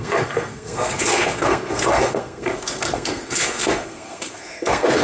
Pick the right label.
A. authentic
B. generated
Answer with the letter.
B